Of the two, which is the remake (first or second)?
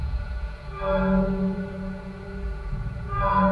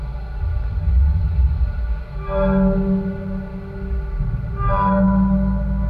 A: first